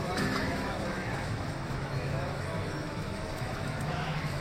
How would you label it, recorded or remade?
remade